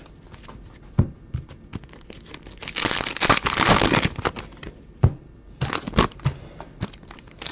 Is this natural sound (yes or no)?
yes